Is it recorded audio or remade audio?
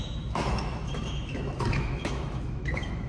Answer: remade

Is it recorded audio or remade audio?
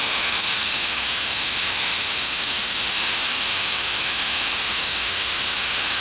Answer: remade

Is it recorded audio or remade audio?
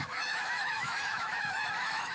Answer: remade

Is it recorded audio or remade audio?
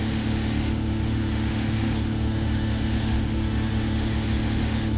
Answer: remade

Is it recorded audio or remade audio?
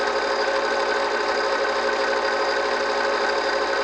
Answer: recorded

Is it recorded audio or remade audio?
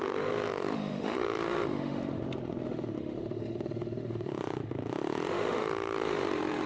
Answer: remade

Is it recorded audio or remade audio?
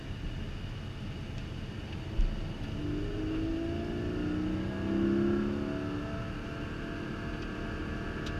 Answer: recorded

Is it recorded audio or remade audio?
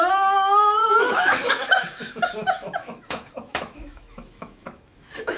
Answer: remade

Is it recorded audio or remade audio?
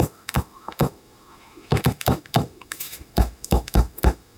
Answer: remade